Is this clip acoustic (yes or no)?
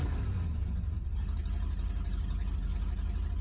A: yes